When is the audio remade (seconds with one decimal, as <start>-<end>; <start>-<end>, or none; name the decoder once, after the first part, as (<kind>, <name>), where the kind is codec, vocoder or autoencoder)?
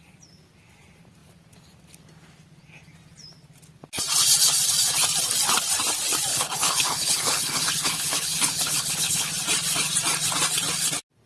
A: 6.3-9.3 (codec, HILCodec)